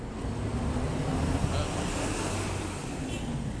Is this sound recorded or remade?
recorded